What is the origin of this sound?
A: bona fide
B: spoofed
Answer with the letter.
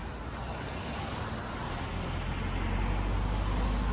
A